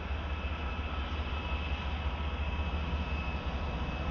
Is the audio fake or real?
real